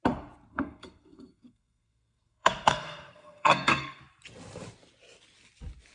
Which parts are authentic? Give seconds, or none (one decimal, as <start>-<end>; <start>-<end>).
0.0-0.5; 4.0-5.9